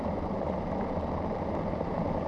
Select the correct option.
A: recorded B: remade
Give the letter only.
A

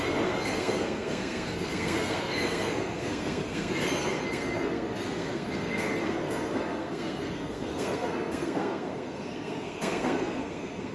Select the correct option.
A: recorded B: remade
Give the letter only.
B